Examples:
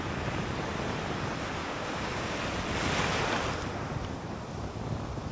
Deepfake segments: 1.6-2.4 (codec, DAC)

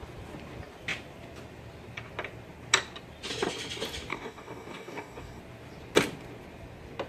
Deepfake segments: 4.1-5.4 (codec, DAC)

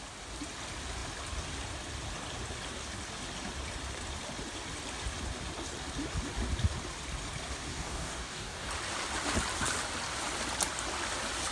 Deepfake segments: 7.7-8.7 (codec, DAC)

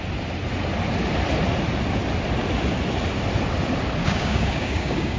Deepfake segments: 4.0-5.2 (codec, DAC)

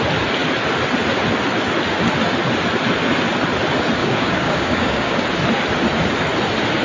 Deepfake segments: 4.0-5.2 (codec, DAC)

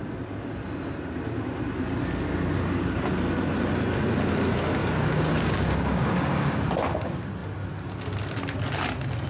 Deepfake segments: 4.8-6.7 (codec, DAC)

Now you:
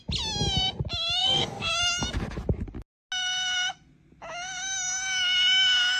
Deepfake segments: 1.2-1.7 (codec, DAC)